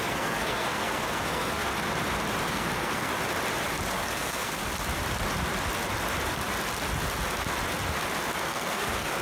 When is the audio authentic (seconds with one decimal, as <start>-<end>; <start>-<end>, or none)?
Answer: 1.7-2.4; 3.1-3.9; 4.6-8.4